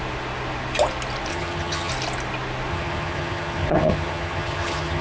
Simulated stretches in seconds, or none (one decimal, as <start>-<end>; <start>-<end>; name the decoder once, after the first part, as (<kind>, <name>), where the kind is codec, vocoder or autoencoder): 1.3-1.9 (vocoder, HiFi-GAN); 2.7-5.0